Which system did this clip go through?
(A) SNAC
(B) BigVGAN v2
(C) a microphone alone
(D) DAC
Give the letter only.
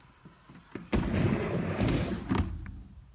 C